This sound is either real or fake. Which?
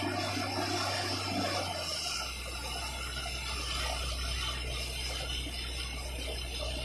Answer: real